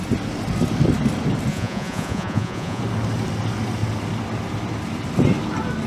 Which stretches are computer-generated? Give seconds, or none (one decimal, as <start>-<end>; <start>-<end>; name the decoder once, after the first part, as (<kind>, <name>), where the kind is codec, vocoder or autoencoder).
1.5-2.8 (vocoder, Vocos)